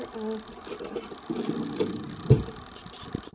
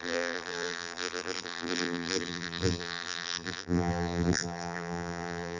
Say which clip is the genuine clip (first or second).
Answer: first